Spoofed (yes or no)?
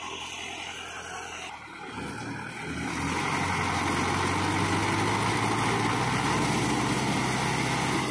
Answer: no